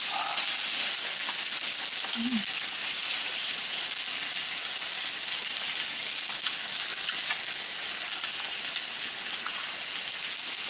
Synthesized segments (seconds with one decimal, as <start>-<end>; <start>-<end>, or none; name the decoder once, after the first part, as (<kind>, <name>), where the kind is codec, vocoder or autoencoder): 2.8-3.9 (vocoder, Vocos)